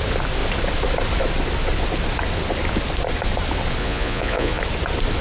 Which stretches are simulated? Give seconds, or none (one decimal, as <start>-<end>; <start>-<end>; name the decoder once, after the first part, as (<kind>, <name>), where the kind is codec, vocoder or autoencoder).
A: 3.8-4.6 (vocoder, Vocos)